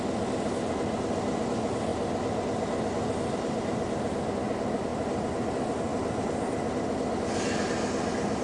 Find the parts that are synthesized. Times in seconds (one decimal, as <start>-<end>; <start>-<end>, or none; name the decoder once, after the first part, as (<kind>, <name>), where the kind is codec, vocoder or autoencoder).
none